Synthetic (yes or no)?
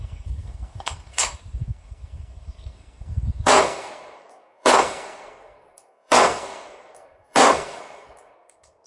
yes